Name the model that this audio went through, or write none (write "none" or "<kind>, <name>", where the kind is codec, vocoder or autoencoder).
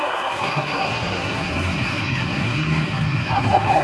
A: codec, SNAC